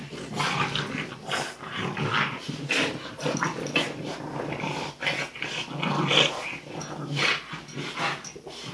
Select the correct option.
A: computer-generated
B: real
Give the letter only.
B